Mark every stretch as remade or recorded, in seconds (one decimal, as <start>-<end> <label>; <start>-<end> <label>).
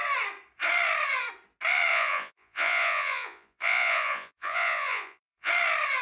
0.0-1.9 recorded; 1.9-5.5 remade; 5.5-6.0 recorded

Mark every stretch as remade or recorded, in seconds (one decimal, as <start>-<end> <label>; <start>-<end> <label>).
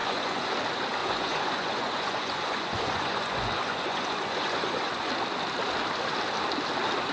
0.0-0.5 remade; 0.5-1.0 recorded; 1.0-5.1 remade; 5.1-7.1 recorded